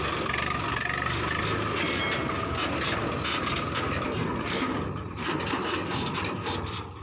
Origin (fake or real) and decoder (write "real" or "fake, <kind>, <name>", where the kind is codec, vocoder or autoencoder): real